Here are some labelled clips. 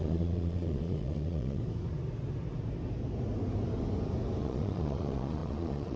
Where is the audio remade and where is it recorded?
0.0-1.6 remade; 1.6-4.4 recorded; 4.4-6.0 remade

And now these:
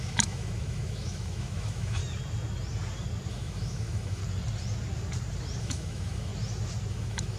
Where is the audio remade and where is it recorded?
0.0-2.0 remade; 2.0-3.3 recorded; 3.3-4.2 remade; 4.2-5.6 recorded; 5.6-6.3 remade; 6.3-6.9 recorded; 6.9-7.4 remade